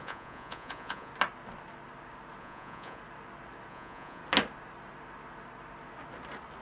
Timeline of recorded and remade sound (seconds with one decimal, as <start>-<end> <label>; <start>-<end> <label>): 0.0-1.1 remade; 1.1-2.4 recorded; 2.4-3.0 remade; 3.0-3.7 recorded; 3.7-4.2 remade; 4.2-6.6 recorded